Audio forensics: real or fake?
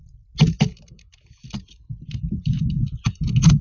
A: real